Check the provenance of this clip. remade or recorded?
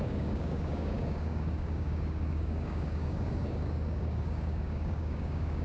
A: remade